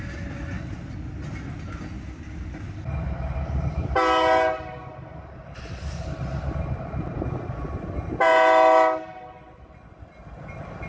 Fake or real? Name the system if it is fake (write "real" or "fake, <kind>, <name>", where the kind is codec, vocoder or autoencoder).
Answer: real